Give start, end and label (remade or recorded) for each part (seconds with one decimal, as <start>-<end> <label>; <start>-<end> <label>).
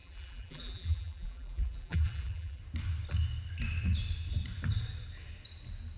0.0-2.6 remade; 2.6-6.0 recorded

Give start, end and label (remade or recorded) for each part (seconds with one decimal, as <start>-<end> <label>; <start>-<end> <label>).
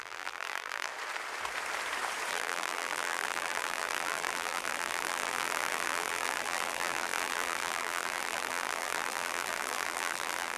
0.0-0.9 remade; 0.9-2.3 recorded; 2.3-10.6 remade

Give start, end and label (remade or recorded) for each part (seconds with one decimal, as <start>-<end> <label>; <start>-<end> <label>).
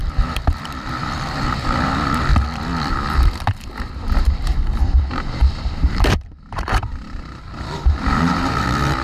0.0-2.3 remade; 2.3-2.9 recorded; 2.9-9.0 remade